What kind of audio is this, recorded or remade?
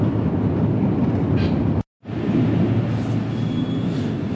recorded